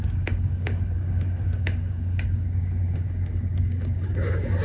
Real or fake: fake